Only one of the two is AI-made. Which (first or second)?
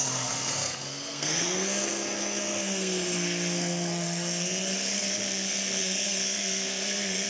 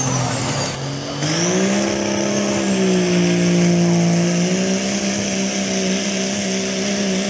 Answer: first